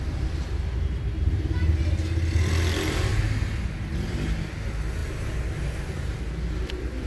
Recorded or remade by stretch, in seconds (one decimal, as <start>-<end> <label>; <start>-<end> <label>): 0.0-7.1 recorded